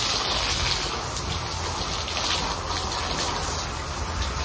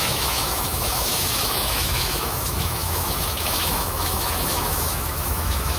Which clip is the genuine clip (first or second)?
first